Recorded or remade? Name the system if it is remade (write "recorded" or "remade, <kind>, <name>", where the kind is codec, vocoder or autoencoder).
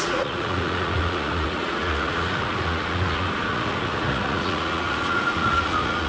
remade, vocoder, Vocos